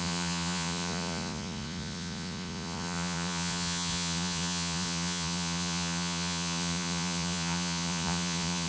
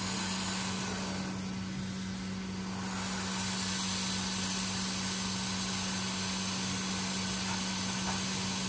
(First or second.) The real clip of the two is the second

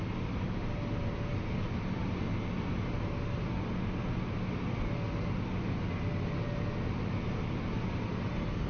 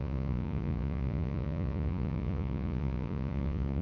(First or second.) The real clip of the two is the first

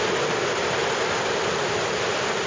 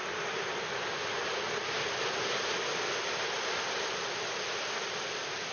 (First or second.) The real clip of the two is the second